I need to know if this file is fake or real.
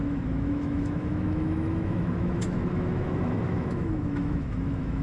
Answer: fake